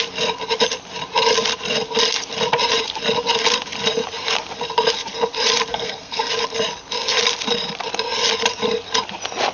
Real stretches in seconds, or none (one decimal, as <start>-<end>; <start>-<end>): 0.0-5.7; 6.3-9.5